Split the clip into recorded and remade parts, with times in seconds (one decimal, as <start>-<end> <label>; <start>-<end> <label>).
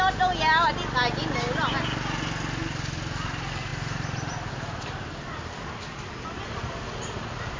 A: 0.0-7.6 recorded